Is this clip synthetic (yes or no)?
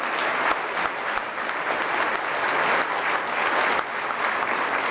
no